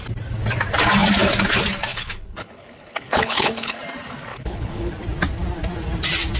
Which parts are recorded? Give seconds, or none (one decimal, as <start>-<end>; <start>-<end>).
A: 0.0-1.9; 3.8-4.3; 4.9-6.4